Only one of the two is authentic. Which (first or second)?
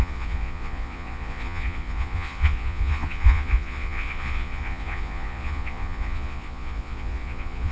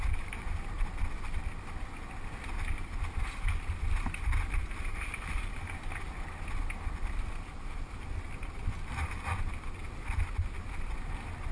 second